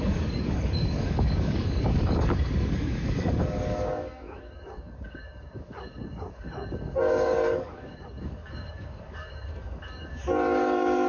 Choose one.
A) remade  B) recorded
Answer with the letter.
A